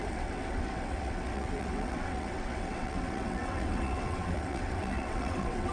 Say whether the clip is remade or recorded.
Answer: remade